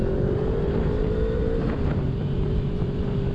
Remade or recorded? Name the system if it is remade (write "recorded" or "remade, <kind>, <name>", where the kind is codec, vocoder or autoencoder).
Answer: remade, vocoder, BigVGAN v2